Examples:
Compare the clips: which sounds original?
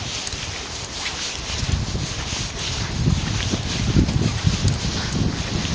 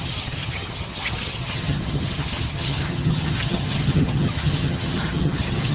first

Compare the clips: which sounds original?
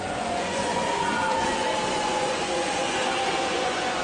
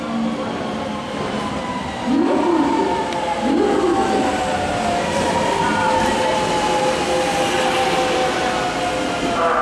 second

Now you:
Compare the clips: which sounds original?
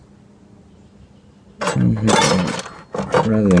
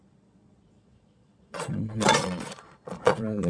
first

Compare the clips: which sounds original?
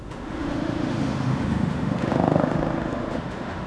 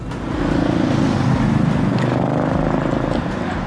second